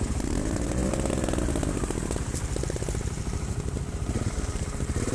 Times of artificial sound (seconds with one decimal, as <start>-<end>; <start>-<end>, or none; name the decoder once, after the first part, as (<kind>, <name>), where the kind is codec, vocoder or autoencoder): 0.0-0.8 (vocoder, BigVGAN v2); 3.9-5.1